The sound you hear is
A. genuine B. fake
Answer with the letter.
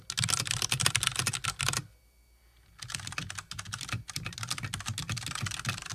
A